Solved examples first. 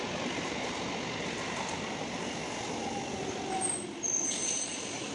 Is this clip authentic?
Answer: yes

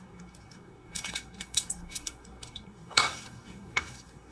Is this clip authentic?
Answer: no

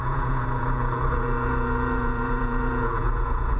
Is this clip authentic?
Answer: no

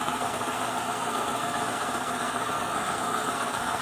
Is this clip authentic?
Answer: no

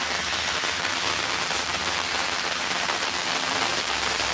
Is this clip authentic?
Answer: yes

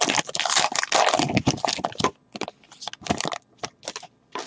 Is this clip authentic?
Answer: yes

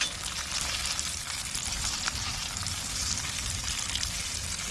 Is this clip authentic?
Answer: yes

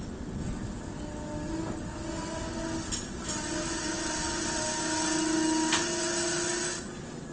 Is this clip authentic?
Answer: yes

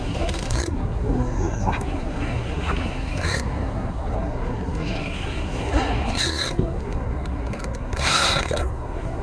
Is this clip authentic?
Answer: no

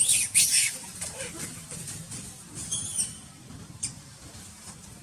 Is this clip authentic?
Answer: no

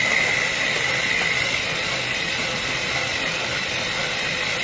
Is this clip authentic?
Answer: yes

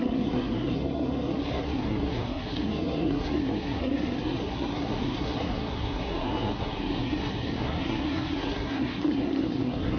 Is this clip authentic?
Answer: no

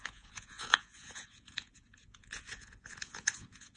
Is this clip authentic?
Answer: no